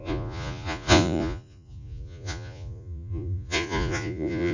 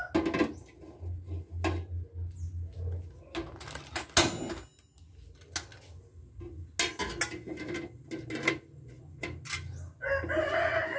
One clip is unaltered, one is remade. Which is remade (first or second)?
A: first